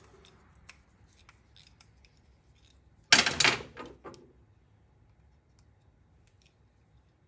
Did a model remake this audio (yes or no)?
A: no